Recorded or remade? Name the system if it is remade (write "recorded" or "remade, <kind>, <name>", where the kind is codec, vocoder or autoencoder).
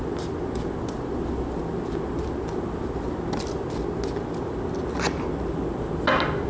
recorded